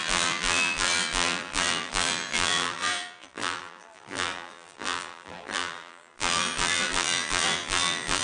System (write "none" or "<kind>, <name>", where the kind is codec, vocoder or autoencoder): vocoder, BigVGAN v2